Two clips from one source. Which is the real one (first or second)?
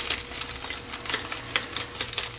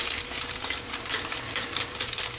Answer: first